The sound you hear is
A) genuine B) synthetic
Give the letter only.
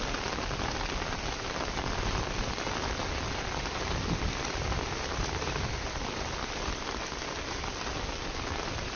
A